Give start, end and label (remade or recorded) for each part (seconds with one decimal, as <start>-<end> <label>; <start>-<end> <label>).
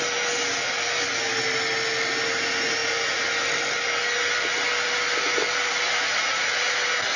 0.0-7.2 recorded